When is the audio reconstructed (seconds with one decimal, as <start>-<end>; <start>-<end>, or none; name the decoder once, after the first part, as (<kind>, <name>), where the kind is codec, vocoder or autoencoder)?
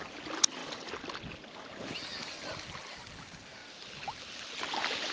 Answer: none